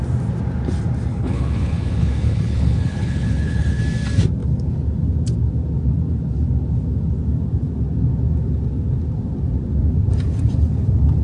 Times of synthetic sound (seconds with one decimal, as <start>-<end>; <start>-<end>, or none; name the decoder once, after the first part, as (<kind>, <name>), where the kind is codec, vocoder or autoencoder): 1.1-3.8 (codec, HILCodec)